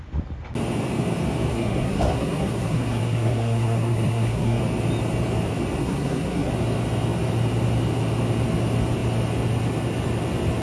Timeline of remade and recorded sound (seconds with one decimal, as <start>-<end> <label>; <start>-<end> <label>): 0.0-1.5 recorded; 1.5-4.6 remade; 4.6-5.8 recorded; 5.8-6.5 remade; 6.5-10.6 recorded